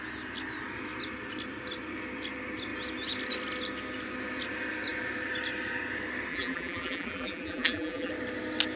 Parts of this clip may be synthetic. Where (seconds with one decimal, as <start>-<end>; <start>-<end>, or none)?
6.3-8.1